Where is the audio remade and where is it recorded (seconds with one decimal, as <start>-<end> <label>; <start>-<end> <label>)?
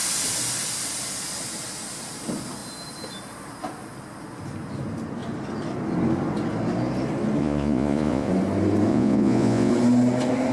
0.0-7.4 recorded; 7.4-8.3 remade; 8.3-8.9 recorded; 8.9-9.7 remade; 9.7-10.5 recorded